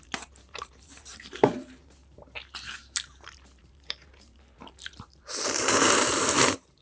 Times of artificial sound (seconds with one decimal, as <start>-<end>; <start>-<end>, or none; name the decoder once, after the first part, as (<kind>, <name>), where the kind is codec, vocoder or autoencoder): 0.0-6.8 (vocoder, BigVGAN v2)